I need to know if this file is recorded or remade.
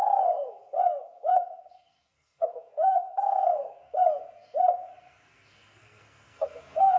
remade